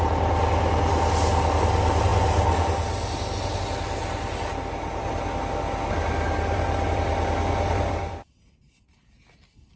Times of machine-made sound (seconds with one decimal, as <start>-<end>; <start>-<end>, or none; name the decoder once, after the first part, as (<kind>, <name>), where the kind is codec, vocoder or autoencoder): none